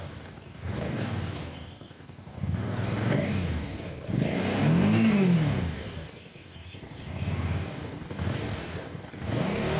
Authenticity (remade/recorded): remade